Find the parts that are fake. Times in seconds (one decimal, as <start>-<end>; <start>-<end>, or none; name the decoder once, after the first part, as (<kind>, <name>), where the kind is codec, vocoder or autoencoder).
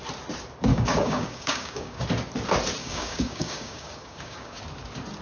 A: 0.7-2.0 (codec, DAC); 2.8-4.6